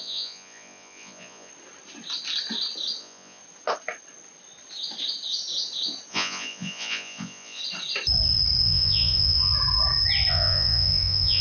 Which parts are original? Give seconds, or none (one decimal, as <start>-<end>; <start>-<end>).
1.5-3.0; 3.4-6.1; 7.6-8.6; 9.5-10.3